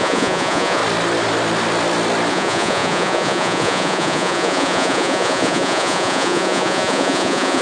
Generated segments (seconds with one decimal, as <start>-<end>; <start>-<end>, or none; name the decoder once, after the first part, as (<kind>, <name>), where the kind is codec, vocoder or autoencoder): 0.0-0.8 (vocoder, Vocos); 2.3-7.6